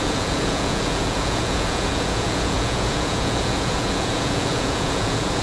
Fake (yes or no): yes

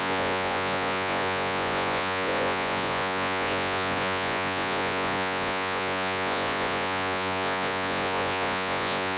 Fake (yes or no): yes